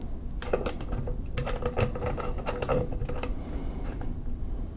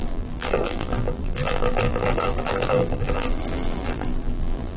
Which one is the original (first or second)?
first